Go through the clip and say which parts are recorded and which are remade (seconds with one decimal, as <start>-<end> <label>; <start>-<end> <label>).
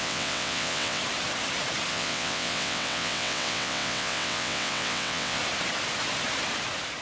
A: 0.0-1.0 remade; 1.0-1.9 recorded; 1.9-5.4 remade; 5.4-7.0 recorded